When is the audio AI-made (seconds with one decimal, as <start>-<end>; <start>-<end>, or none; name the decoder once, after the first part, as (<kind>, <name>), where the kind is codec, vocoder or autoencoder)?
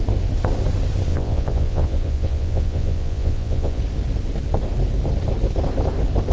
1.1-3.8 (vocoder, Vocos)